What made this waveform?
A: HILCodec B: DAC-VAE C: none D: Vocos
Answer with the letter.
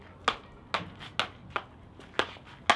C